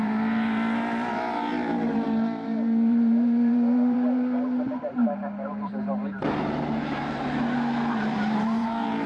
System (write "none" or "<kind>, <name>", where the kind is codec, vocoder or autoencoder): vocoder, BigVGAN v2